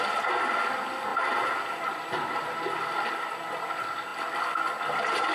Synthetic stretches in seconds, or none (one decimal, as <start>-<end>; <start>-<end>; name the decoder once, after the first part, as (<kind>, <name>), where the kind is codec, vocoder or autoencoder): 1.1-3.6 (vocoder, BigVGAN v2)